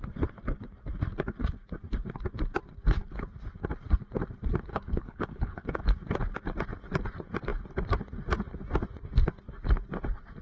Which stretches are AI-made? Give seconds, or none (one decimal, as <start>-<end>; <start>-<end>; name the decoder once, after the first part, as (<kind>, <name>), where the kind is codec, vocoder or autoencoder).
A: 4.7-5.8 (codec, HILCodec)